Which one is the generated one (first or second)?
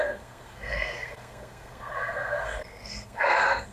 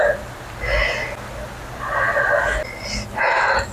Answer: first